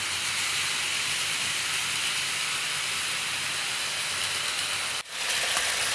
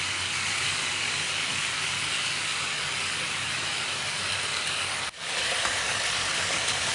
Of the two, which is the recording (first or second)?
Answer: first